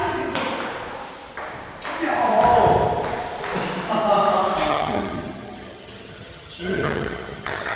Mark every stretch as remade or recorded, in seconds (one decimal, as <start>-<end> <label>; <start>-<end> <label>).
0.0-4.7 recorded; 4.7-7.8 remade